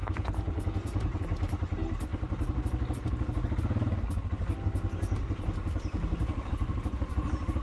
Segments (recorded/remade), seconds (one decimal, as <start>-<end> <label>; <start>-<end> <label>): 0.0-1.2 remade; 1.2-7.6 recorded